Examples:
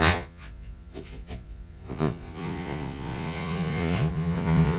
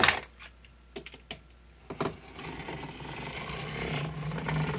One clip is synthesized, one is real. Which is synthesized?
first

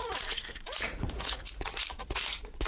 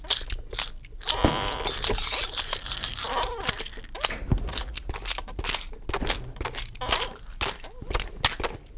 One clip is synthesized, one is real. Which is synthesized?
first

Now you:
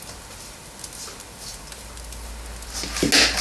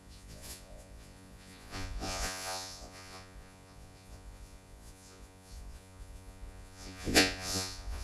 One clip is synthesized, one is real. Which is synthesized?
second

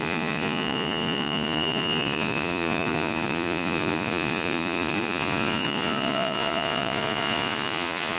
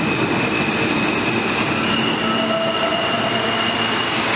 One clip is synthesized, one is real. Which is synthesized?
first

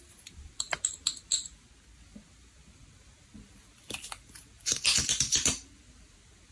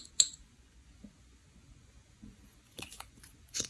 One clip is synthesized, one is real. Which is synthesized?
second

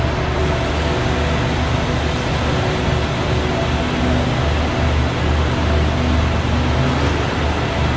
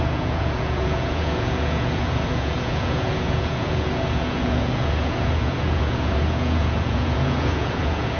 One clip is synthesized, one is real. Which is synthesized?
second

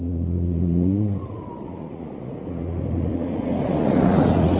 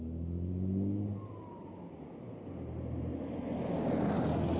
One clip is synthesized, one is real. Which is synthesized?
first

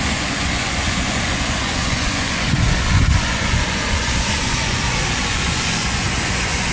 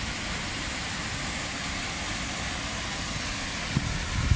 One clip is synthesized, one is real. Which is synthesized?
first